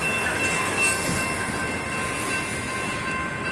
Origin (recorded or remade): recorded